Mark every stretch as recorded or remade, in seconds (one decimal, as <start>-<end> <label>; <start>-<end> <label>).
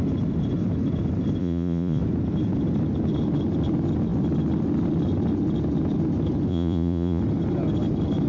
0.0-1.4 recorded; 1.4-2.0 remade; 2.0-6.5 recorded; 6.5-7.2 remade; 7.2-8.3 recorded